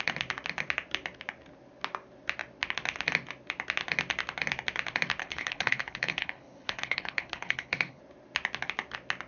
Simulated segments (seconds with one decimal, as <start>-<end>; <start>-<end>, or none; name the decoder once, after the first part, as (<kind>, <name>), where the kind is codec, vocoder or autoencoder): 5.2-8.0 (codec, HILCodec)